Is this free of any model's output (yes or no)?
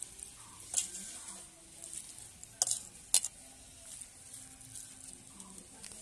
yes